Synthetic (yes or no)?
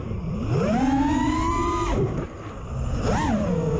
no